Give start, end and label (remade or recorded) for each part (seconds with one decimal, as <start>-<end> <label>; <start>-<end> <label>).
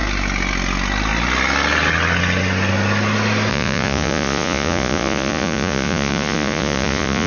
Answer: 0.0-3.5 recorded; 3.5-7.3 remade